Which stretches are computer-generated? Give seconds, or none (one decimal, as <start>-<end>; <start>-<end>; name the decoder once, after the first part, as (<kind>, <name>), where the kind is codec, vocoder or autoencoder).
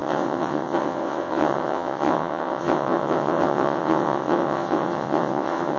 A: 0.0-5.8 (vocoder, WaveNeXt)